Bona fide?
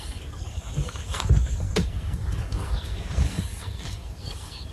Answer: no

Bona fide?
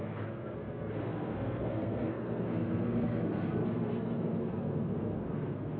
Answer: no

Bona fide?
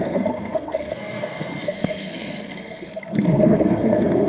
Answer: no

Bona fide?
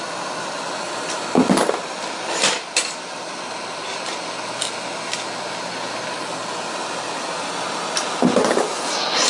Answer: yes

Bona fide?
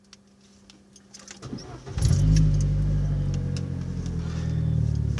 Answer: yes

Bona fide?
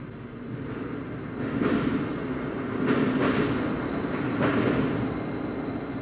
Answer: yes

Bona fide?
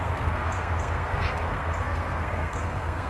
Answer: no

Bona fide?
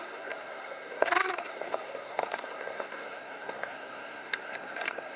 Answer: no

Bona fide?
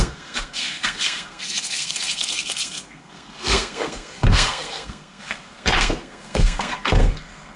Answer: no